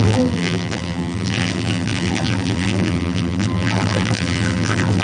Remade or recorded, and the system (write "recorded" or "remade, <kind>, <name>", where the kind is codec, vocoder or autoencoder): remade, vocoder, BigVGAN v2